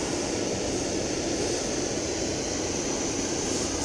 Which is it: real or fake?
real